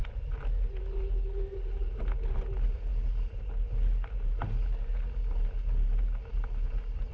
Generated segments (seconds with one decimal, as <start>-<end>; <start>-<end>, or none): none